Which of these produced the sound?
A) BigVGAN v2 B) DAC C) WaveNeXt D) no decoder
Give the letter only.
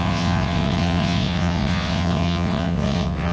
C